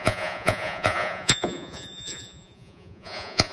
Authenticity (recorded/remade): remade